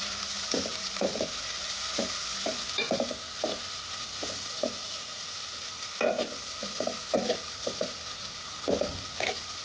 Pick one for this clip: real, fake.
real